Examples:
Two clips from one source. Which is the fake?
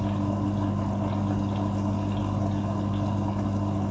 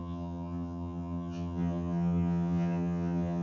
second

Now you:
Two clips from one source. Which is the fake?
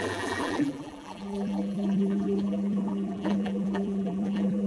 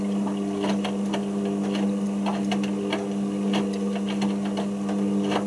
first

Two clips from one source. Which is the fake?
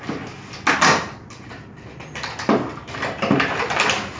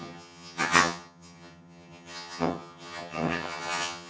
second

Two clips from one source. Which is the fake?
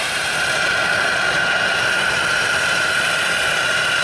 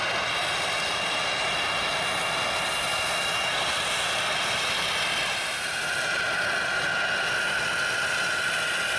first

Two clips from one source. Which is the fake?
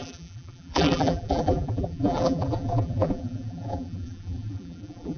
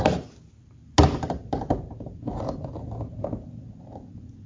first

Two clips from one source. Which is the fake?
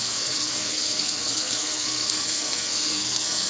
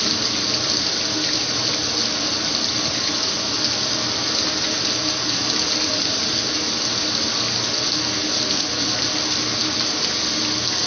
first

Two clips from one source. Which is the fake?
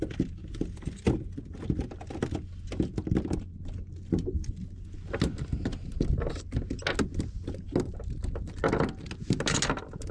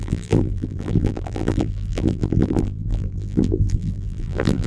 second